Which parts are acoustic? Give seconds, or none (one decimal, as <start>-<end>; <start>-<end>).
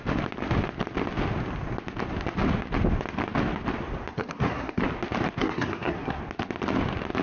0.0-4.1; 4.8-5.4; 6.2-7.2